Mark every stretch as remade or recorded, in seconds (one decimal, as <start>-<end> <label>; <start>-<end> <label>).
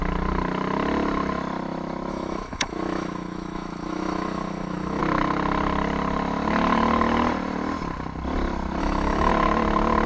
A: 0.0-2.1 recorded; 2.1-5.0 remade; 5.0-8.8 recorded; 8.8-9.3 remade; 9.3-10.1 recorded